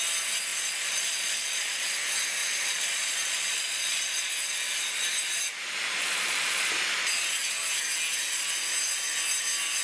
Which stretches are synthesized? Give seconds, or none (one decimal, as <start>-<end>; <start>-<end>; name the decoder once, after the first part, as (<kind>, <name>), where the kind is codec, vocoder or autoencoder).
0.5-1.9 (vocoder, Vocos); 2.4-4.3; 6.0-6.7